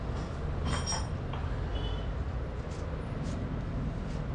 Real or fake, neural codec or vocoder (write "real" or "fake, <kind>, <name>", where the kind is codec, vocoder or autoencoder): real